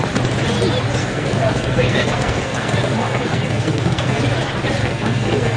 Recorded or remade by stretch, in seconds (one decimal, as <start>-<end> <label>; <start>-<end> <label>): 0.0-1.0 recorded; 1.0-4.2 remade; 4.2-4.8 recorded; 4.8-5.6 remade